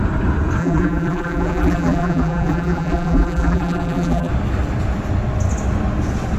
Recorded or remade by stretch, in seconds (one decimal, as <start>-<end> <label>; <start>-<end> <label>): 0.0-0.6 recorded; 0.6-4.3 remade; 4.3-6.4 recorded